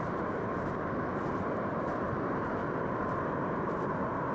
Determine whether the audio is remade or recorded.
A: recorded